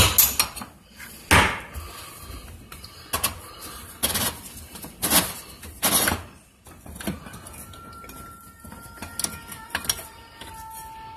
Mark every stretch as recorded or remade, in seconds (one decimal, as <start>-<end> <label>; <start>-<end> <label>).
0.0-11.2 recorded